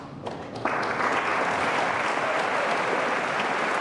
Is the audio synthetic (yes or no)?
no